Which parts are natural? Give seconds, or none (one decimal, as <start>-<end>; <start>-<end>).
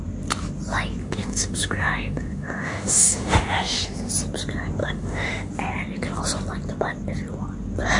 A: 0.0-1.0; 4.1-4.8; 5.5-8.0